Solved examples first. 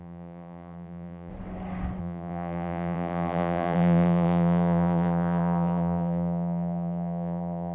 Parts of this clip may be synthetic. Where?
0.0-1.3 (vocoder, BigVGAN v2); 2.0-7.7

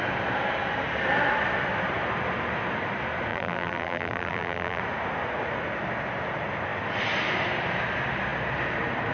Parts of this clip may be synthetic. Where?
3.3-4.8 (vocoder, BigVGAN v2)

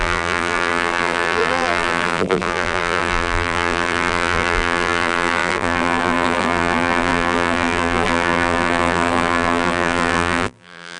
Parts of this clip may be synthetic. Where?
0.0-11.0 (vocoder, BigVGAN v2)

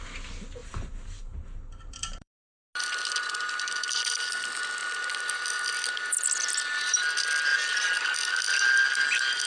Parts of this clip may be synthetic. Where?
0.6-2.4 (vocoder, BigVGAN v2)